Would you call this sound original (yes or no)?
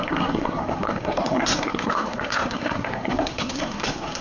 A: no